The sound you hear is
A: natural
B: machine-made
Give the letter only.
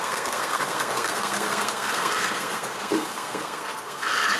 B